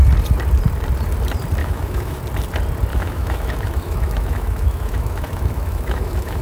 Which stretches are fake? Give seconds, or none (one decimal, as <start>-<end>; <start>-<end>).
1.6-2.2; 2.9-6.4